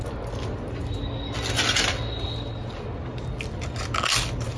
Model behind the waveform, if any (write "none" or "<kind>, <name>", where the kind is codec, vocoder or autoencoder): none